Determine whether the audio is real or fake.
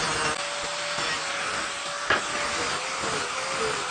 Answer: real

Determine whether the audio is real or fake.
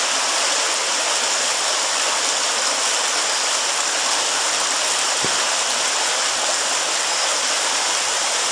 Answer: real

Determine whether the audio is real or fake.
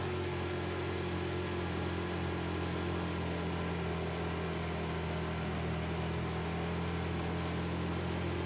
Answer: real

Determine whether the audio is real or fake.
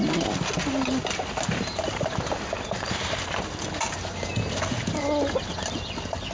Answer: real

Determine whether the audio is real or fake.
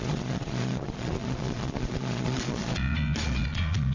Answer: fake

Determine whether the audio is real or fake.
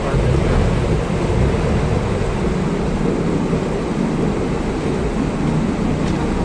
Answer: real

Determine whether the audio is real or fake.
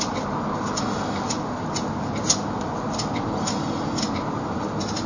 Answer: real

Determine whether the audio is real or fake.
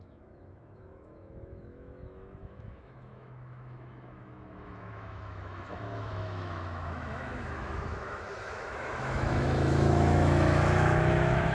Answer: fake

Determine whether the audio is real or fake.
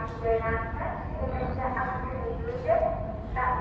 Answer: real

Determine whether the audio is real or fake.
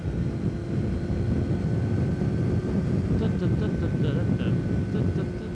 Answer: real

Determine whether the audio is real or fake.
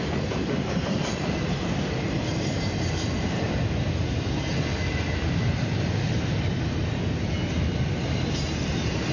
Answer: fake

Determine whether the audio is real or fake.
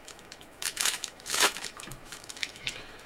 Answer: fake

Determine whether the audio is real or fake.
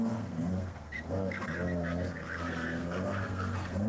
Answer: fake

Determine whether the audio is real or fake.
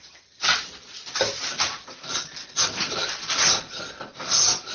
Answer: real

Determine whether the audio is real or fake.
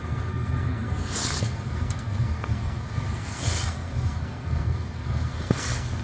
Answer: fake